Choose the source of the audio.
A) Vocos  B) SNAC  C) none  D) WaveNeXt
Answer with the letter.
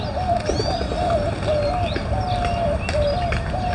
C